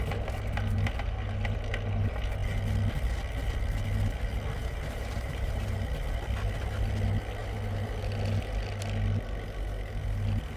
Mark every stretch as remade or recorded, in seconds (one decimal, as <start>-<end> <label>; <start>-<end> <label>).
0.0-4.6 recorded; 4.6-5.8 remade; 5.8-10.6 recorded